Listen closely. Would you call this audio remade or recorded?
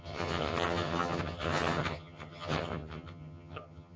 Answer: remade